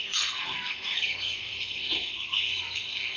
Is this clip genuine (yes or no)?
no